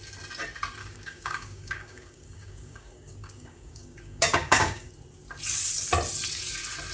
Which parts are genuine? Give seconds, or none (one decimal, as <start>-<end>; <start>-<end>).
0.0-0.8; 4.9-6.9